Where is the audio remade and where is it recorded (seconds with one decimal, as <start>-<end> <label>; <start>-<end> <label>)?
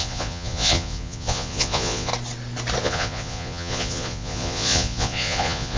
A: 0.0-2.1 remade; 2.1-2.8 recorded; 2.8-5.8 remade